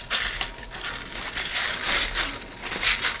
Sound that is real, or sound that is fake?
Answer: real